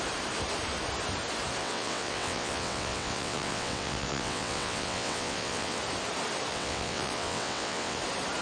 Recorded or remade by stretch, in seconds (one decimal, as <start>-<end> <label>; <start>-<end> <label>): 0.0-1.6 recorded; 1.6-5.8 remade; 5.8-6.5 recorded; 6.5-8.0 remade; 8.0-8.4 recorded